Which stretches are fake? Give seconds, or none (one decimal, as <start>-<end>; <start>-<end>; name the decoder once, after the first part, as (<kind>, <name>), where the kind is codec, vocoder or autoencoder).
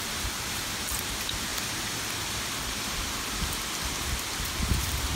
0.0-1.5 (vocoder, BigVGAN v2); 4.6-5.2